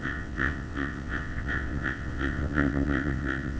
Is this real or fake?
fake